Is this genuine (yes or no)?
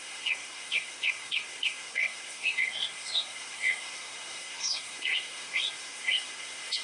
no